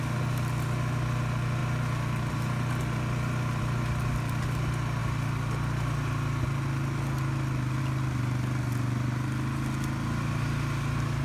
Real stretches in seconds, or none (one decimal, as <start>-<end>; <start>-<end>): 0.0-11.2